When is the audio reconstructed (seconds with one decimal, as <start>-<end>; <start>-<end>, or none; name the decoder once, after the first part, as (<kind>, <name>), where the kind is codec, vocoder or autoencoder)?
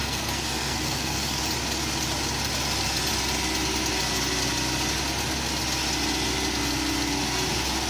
0.0-1.4 (codec, SNAC)